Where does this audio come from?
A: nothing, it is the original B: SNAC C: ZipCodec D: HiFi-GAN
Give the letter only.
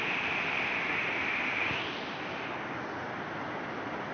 A